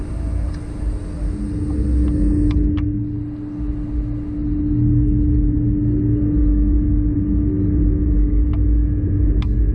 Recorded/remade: recorded